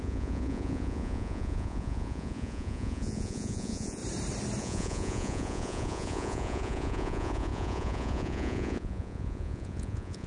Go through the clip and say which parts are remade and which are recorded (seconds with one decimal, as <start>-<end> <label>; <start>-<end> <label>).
0.0-4.0 remade; 4.0-4.6 recorded; 4.6-10.3 remade